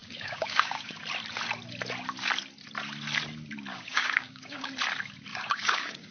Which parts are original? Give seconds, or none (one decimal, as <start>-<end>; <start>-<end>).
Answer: 1.0-3.7; 4.7-5.3